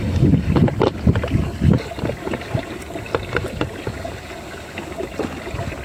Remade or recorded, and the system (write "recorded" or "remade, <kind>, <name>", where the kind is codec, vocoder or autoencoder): recorded